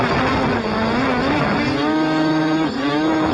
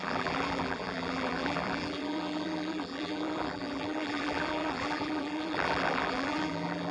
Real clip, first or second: first